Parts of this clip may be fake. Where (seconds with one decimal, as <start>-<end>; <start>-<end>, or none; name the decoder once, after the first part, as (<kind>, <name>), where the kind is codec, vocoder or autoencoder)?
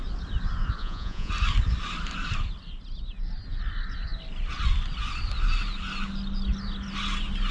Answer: 0.8-1.3 (vocoder, Vocos)